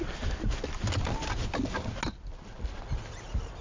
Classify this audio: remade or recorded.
recorded